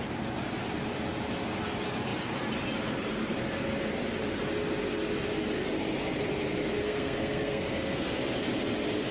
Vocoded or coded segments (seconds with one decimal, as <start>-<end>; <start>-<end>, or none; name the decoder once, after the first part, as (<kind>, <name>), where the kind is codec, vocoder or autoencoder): 6.8-8.2 (codec, SNAC)